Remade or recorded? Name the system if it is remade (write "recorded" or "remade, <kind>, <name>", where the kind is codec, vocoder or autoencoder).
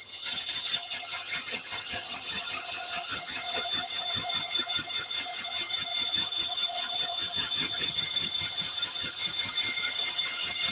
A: remade, vocoder, HiFi-GAN